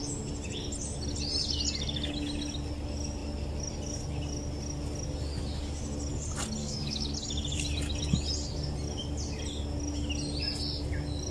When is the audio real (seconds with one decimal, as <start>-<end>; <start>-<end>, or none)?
0.0-6.6; 7.1-11.3